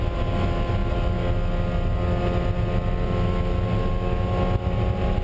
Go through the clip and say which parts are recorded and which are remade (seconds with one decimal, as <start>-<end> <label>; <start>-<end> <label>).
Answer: 0.0-5.2 recorded